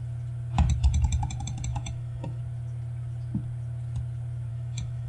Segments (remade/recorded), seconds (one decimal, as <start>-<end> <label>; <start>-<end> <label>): 0.0-1.7 recorded; 1.7-2.4 remade; 2.4-4.5 recorded; 4.5-5.1 remade